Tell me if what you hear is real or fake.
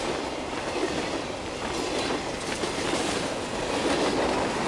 real